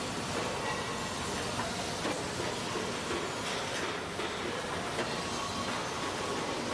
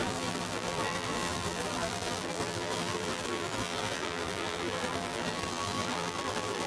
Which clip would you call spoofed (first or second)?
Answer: second